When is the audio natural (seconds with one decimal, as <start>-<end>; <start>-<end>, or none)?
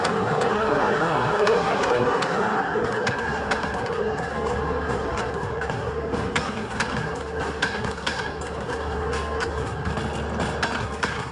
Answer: 9.9-10.8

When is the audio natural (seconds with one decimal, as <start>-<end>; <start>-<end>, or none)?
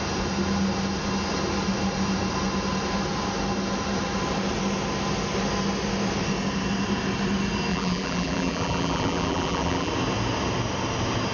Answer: 0.0-7.7; 9.9-11.3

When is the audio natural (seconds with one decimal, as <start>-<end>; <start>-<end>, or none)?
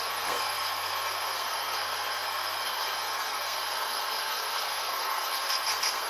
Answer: none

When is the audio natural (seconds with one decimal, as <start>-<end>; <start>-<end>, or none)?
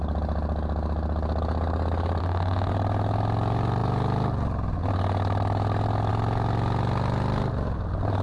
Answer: 0.0-2.2; 2.7-8.2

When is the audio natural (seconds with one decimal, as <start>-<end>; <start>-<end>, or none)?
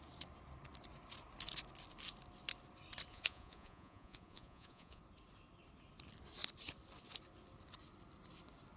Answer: 0.0-3.1; 5.0-8.8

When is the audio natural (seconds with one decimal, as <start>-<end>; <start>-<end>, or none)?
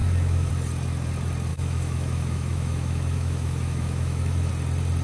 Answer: 0.5-1.5; 4.5-5.0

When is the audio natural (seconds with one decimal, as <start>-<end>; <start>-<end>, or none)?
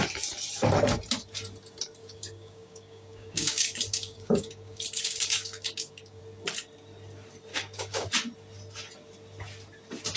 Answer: 0.0-2.0; 6.2-7.5; 8.1-10.2